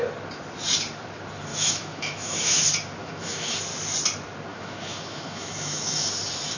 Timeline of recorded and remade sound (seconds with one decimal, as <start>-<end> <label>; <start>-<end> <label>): 0.0-1.5 recorded; 1.5-2.6 remade; 2.6-3.0 recorded; 3.0-3.6 remade; 3.6-4.5 recorded; 4.5-6.1 remade; 6.1-6.6 recorded